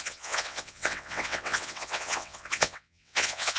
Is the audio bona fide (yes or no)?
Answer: no